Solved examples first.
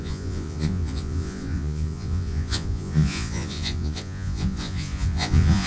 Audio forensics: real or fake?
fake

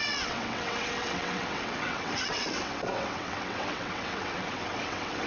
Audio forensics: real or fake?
fake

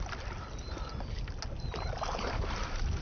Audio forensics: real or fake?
real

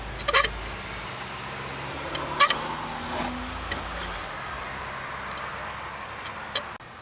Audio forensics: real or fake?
real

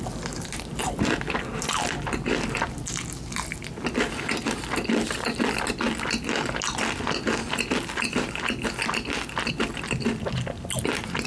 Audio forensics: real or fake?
real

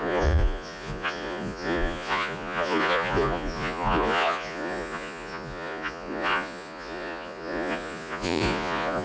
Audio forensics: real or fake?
fake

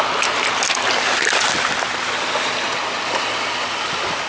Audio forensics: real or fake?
real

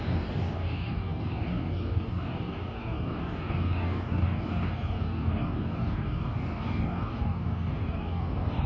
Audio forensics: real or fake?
fake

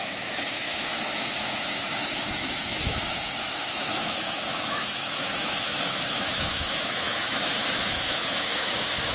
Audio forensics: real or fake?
fake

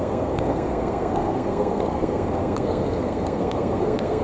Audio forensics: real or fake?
fake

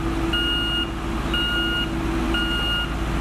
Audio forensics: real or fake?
real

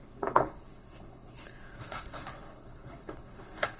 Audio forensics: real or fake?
fake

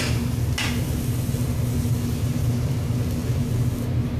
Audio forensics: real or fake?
real